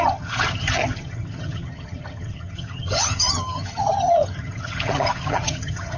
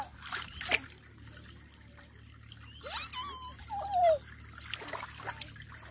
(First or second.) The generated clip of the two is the first